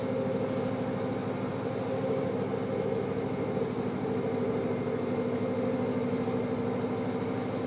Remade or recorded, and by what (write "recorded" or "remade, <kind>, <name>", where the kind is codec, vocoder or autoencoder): recorded